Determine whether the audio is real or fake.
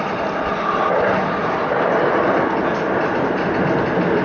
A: real